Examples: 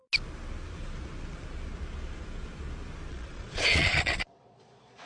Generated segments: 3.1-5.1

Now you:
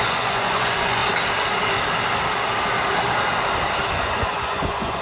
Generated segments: 0.0-1.0; 3.9-5.0

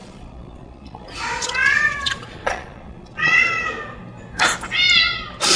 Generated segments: 0.0-3.4

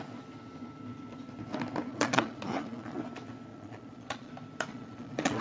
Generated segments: 1.9-3.0; 3.5-4.3; 4.7-5.4

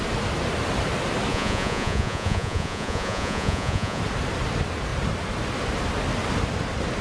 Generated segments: 1.3-4.0

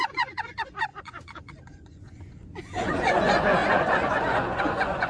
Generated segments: 0.0-5.1